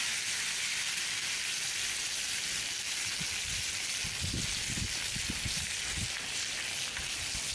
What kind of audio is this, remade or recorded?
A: recorded